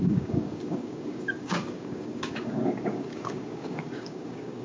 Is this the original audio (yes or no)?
no